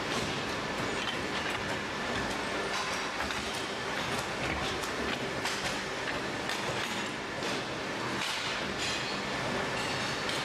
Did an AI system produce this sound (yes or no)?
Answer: no